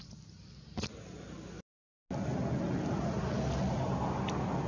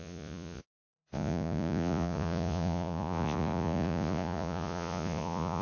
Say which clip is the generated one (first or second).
second